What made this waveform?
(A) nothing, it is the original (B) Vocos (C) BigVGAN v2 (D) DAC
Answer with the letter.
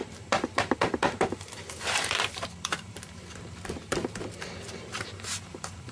C